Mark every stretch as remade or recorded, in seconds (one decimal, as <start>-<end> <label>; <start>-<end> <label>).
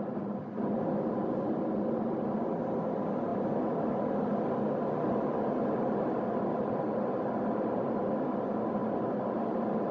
0.0-9.9 recorded